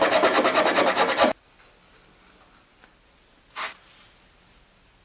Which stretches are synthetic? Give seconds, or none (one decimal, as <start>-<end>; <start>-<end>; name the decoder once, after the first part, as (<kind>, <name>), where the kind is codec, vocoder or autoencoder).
none